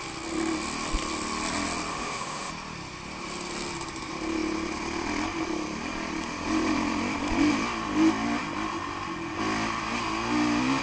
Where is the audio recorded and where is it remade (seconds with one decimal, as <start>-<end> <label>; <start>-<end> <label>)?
0.0-1.9 recorded; 1.9-2.5 remade; 2.5-10.8 recorded